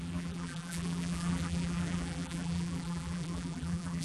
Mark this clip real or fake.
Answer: fake